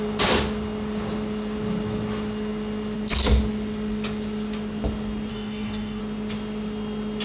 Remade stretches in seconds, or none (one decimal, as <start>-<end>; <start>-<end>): 5.3-6.0